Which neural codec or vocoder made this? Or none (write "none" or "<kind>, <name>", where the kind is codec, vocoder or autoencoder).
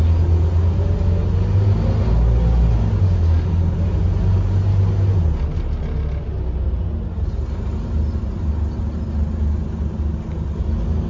none